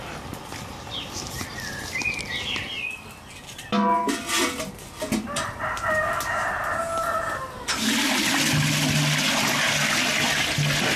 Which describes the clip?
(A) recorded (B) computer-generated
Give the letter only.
A